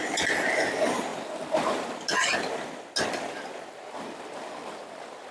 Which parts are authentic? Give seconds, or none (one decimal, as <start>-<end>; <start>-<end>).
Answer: 0.0-5.3